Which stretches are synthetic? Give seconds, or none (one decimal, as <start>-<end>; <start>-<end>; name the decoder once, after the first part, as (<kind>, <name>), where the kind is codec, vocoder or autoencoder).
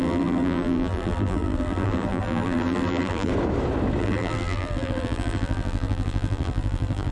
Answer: 0.0-3.3 (vocoder, BigVGAN v2); 4.0-7.1